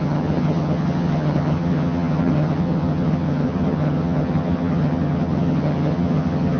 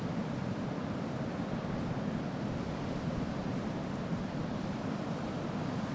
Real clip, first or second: second